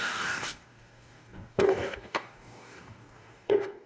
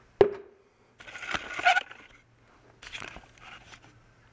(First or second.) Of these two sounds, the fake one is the first